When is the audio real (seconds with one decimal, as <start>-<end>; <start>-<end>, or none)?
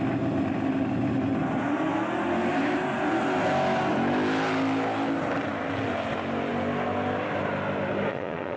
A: 0.0-8.1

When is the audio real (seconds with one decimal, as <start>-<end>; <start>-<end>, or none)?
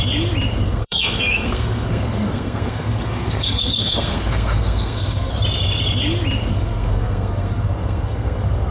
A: 0.0-0.6; 5.3-6.5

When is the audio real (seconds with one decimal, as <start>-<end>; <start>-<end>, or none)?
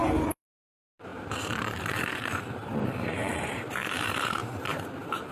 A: none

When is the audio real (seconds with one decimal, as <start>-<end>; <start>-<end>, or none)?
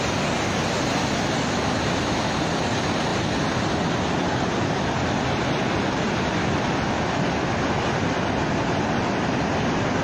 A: 0.0-10.0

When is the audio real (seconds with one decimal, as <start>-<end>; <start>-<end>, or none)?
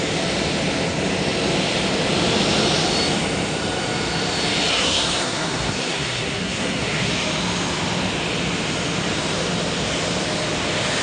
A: 0.0-4.7; 7.1-11.0